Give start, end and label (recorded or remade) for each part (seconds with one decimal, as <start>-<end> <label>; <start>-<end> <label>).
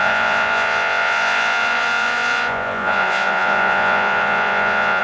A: 0.0-5.0 remade